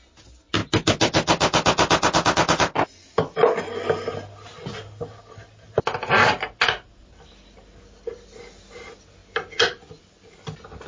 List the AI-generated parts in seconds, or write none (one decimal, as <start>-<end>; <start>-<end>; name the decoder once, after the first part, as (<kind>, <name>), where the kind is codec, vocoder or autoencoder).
none